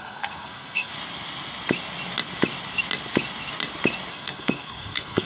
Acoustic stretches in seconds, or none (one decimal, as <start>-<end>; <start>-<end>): 0.9-4.1